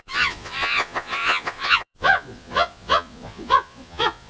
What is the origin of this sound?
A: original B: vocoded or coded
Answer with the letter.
B